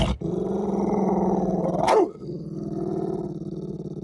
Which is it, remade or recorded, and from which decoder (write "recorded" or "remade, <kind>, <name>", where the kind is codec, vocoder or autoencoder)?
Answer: recorded